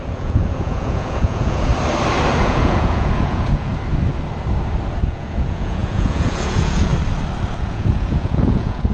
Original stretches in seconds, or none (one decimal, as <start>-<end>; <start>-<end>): 1.7-2.4; 3.7-5.0; 6.9-7.6